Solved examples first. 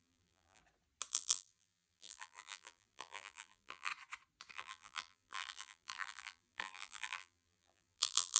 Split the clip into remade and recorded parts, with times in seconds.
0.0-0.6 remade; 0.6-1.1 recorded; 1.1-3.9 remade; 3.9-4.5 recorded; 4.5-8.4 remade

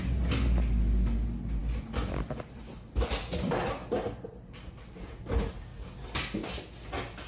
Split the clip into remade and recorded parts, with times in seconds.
0.0-1.6 recorded; 1.6-2.7 remade; 2.7-7.3 recorded

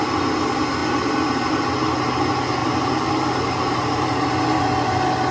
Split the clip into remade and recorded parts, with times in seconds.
0.0-2.6 recorded; 2.6-5.3 remade

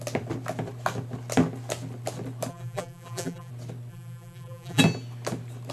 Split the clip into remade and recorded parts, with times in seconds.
0.0-2.5 recorded; 2.5-3.5 remade; 3.5-3.9 recorded; 3.9-4.8 remade; 4.8-5.7 recorded

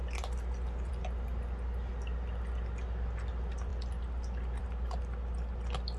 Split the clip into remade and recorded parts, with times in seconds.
0.0-6.0 recorded

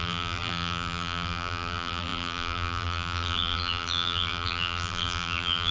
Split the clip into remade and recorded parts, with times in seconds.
0.0-5.7 remade